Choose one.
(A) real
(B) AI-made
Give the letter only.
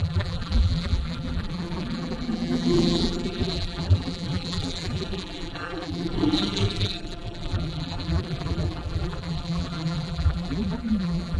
B